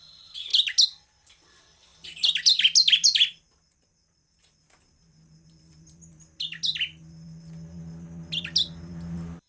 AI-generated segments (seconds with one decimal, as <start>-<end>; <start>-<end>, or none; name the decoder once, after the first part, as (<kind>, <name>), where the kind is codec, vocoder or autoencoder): none